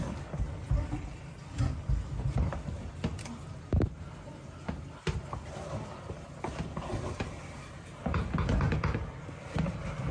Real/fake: real